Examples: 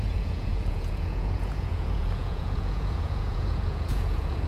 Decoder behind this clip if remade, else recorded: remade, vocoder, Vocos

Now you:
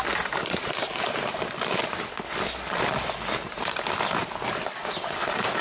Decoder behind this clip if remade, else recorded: recorded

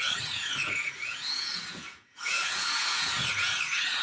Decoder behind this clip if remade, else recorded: remade, vocoder, Vocos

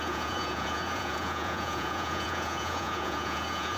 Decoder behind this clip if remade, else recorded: remade, vocoder, Vocos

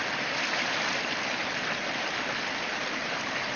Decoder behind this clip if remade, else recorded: recorded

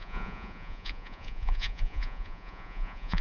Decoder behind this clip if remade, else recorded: remade, vocoder, Vocos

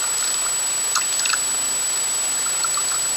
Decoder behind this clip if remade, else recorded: recorded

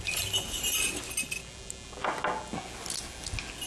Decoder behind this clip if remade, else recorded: recorded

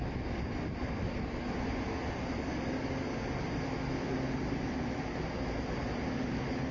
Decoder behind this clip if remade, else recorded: recorded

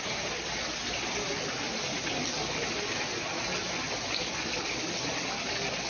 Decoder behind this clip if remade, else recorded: recorded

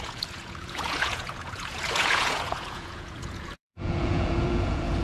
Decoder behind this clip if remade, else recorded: remade, vocoder, Vocos